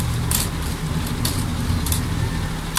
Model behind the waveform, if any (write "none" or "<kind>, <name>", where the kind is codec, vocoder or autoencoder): none